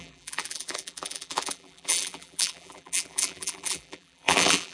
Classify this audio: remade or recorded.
remade